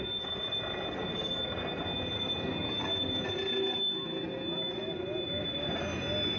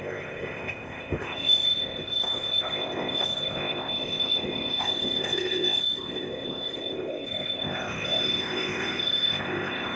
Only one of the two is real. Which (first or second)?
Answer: first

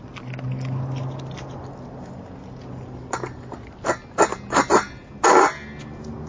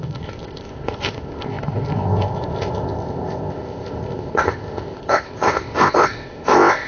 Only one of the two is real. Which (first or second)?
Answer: first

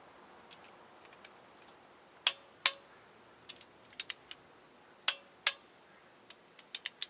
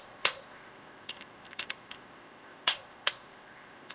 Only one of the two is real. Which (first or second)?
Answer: first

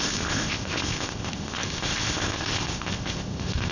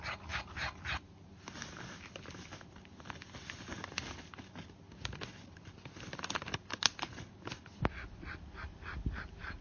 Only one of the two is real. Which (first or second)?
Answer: second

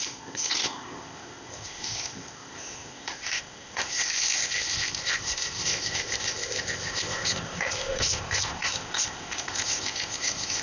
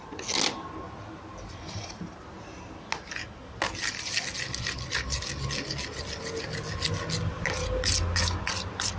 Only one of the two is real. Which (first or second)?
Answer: second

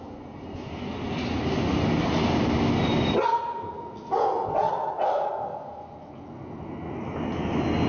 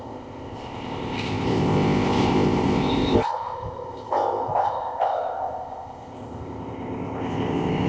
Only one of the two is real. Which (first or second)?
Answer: first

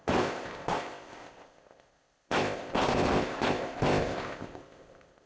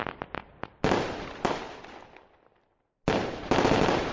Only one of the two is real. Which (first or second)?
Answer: second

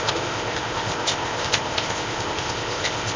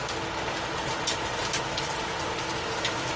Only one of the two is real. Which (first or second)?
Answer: second